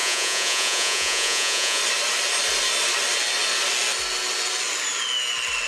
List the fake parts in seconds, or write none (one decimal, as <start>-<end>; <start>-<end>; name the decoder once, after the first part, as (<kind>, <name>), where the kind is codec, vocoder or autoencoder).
0.0-1.8 (vocoder, Vocos)